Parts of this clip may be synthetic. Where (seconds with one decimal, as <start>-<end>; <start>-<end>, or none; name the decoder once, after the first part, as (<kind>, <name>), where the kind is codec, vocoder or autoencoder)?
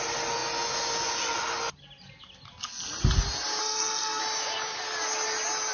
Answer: 3.6-4.2 (codec, SNAC)